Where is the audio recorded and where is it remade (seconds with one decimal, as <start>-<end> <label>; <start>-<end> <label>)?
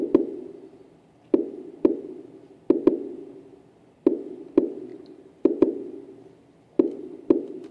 0.0-4.9 recorded; 4.9-6.0 remade; 6.0-7.7 recorded